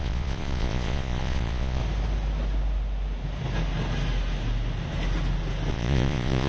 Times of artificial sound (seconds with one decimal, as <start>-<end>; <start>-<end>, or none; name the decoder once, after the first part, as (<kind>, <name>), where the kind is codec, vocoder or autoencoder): 0.0-1.8 (vocoder, Vocos); 5.7-6.5

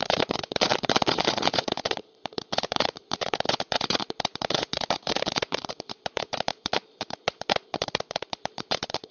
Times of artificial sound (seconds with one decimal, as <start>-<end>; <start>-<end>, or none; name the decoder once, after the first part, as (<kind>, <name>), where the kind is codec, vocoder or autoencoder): 0.0-9.1 (vocoder, Vocos)